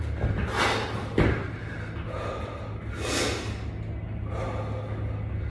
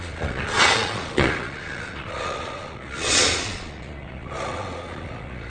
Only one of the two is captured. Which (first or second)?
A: first